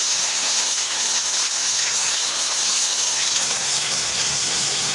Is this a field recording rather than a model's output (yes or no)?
no